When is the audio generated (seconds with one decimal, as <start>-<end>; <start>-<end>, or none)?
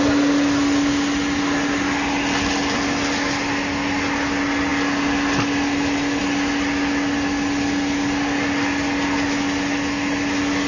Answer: none